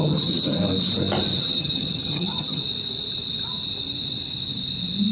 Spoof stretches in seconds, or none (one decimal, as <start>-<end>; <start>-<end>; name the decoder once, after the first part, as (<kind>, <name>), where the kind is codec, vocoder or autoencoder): 0.0-0.6 (vocoder, HiFi-GAN); 1.4-2.6